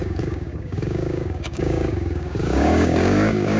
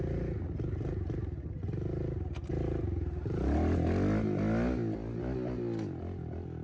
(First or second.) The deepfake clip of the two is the first